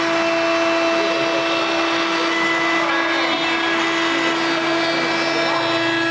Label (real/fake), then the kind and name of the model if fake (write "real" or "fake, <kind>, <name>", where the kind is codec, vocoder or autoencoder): real